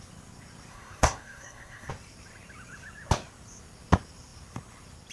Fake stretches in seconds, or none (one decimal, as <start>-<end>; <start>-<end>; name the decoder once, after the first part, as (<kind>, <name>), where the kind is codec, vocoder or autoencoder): 0.7-1.9 (codec, SNAC)